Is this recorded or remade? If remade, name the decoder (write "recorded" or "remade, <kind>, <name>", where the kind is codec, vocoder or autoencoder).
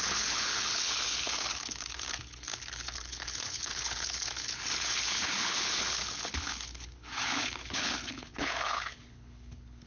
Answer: remade, codec, HILCodec